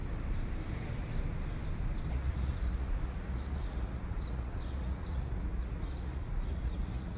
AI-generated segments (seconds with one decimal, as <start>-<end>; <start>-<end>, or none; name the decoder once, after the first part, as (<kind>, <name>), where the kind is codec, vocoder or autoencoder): 2.1-7.2 (vocoder, Vocos)